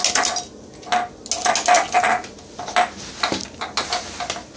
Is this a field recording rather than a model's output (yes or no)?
yes